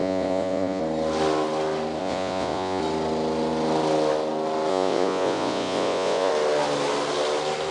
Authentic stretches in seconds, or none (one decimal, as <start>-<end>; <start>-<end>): 0.8-2.0; 2.8-4.7; 6.3-7.7